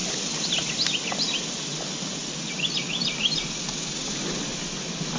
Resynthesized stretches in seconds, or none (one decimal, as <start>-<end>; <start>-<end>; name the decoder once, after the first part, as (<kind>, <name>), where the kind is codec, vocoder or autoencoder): none